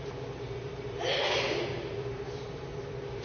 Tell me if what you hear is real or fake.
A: fake